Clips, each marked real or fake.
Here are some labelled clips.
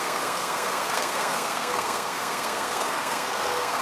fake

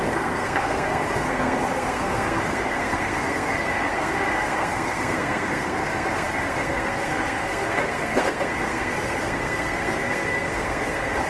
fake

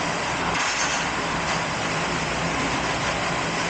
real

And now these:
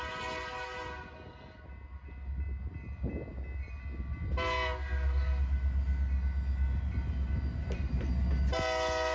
real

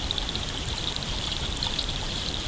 fake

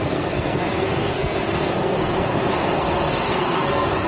fake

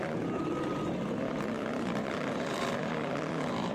real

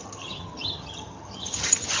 fake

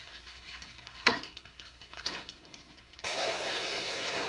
fake